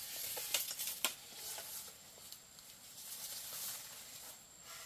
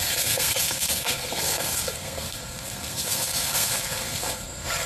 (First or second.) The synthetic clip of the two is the second